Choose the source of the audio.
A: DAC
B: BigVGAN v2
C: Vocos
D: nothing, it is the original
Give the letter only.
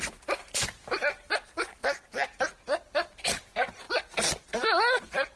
D